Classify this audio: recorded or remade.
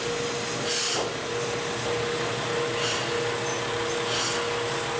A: recorded